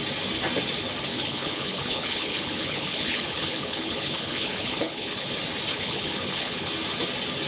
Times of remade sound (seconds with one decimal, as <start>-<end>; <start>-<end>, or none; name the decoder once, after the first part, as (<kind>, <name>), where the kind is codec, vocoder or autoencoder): 1.1-5.3 (codec, HILCodec); 5.7-6.7

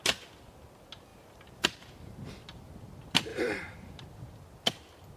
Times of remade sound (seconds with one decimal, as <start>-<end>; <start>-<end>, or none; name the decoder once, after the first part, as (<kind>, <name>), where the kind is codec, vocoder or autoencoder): 1.1-2.3 (vocoder, BigVGAN v2); 3.3-4.0

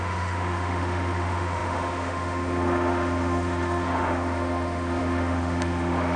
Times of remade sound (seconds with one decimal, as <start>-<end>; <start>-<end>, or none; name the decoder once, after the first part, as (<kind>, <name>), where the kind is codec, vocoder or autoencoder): 0.0-6.2 (autoencoder, DAC-VAE)

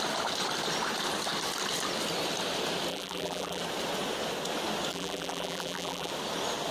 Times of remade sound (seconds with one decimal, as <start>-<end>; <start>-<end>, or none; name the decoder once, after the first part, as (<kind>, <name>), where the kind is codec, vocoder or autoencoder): 2.9-3.6 (vocoder, BigVGAN v2); 4.9-6.1

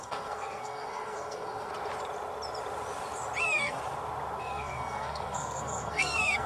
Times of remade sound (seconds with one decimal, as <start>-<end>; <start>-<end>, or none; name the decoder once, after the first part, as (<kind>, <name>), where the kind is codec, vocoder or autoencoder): 0.0-1.7 (codec, SNAC); 3.4-3.8; 4.4-6.5

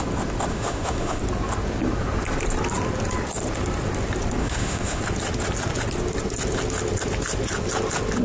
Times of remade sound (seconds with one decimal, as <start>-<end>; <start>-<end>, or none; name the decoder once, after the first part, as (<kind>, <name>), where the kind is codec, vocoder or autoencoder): 0.5-1.2 (autoencoder, DAC-VAE); 4.4-5.0